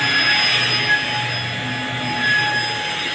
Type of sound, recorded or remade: recorded